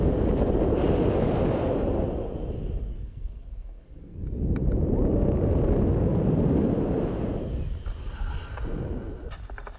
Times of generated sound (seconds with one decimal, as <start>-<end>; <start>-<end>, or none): 2.9-4.2